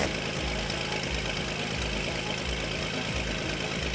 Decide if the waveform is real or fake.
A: real